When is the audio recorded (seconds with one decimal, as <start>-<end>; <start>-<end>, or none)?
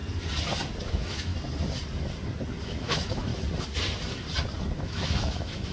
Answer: 0.0-0.9; 1.3-2.6; 3.3-4.8